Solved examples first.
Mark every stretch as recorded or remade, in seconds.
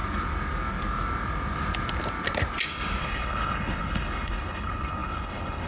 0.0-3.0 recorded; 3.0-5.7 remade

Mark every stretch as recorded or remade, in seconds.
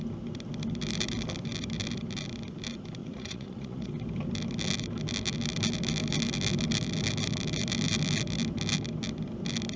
0.0-3.0 recorded; 3.0-3.9 remade; 3.9-9.8 recorded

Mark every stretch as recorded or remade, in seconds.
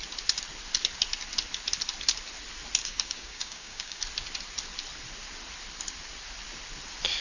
0.0-2.8 recorded; 2.8-4.0 remade; 4.0-7.2 recorded